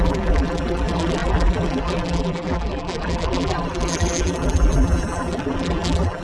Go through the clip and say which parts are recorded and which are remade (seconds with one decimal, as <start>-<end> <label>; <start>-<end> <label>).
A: 0.0-6.2 remade